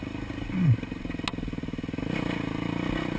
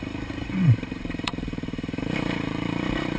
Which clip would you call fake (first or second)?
second